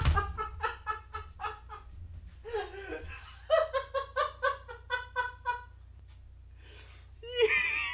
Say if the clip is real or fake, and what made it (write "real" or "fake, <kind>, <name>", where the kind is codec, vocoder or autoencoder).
real